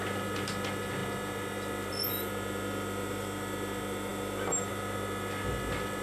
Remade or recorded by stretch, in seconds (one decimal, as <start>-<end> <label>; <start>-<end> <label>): 0.0-6.0 recorded